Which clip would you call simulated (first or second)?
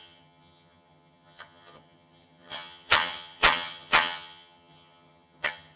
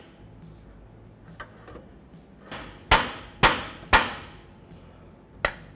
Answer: first